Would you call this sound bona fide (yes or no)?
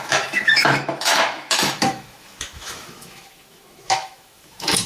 no